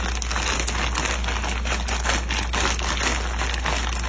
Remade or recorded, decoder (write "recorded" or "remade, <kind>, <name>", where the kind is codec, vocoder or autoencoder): recorded